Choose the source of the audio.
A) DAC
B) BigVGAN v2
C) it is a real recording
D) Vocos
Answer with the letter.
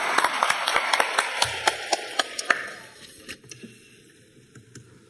B